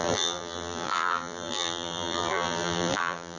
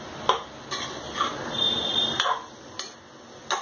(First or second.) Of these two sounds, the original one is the second